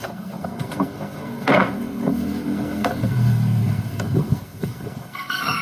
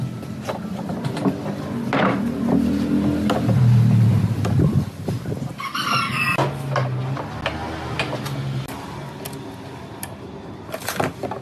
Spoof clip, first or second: first